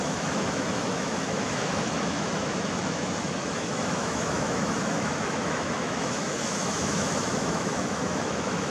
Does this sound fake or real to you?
fake